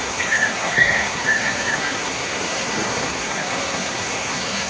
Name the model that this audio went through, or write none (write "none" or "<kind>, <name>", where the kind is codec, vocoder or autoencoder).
codec, SNAC